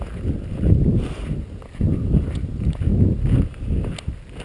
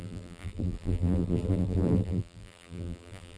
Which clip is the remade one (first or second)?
second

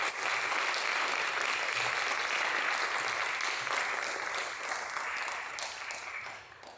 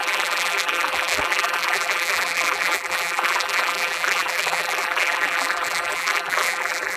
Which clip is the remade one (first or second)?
second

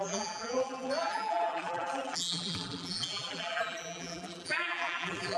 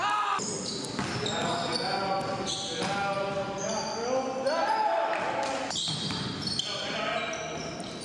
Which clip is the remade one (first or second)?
first